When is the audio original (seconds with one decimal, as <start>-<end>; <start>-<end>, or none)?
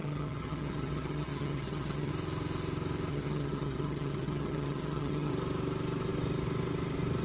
2.1-3.1; 5.3-7.2